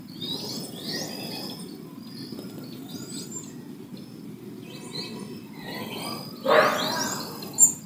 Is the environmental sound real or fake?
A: real